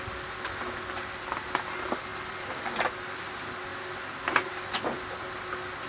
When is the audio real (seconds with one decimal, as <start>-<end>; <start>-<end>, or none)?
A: 0.0-5.9